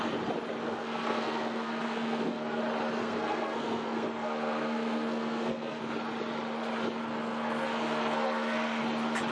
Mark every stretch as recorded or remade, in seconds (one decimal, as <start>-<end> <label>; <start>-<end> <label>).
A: 0.0-0.6 recorded; 0.6-2.6 remade; 2.6-3.0 recorded; 3.0-5.8 remade; 5.8-7.0 recorded; 7.0-8.8 remade; 8.8-9.3 recorded